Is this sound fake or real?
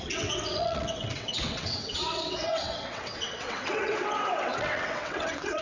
fake